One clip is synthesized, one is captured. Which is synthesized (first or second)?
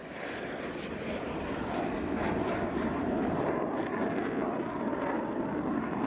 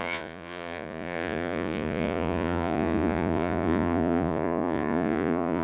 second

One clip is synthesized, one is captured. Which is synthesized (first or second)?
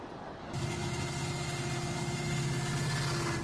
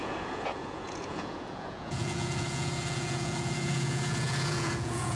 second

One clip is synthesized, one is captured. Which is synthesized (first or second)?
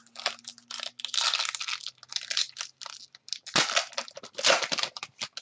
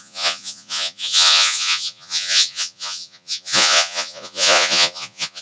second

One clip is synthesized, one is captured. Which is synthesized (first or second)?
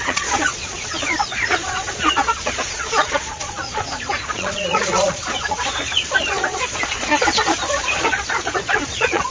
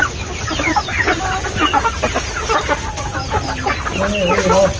first